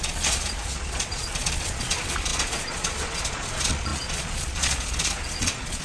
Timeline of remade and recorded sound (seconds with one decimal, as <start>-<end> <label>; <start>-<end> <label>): 0.0-5.8 remade